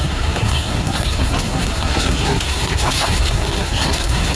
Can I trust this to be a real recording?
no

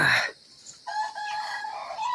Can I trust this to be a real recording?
yes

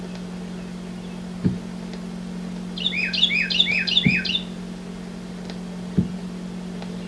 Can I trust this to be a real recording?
yes